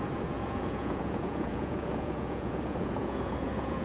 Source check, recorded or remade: remade